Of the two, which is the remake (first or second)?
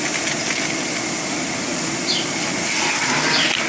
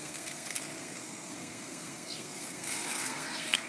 second